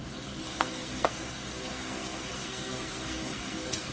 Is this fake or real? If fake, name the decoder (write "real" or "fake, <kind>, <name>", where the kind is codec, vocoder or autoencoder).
fake, codec, SNAC